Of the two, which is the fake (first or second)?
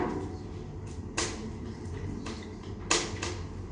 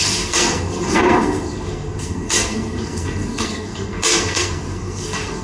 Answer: second